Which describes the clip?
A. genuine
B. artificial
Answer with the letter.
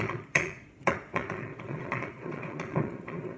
B